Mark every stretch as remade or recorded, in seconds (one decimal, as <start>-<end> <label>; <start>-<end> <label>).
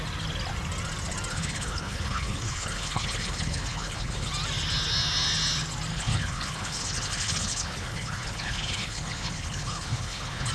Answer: 0.0-1.3 recorded; 1.3-4.3 remade; 4.3-5.9 recorded; 5.9-10.5 remade